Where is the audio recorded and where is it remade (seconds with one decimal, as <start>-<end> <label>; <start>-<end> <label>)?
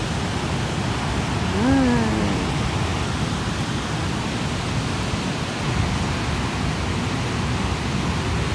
0.0-8.5 recorded